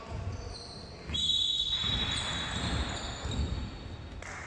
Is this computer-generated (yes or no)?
no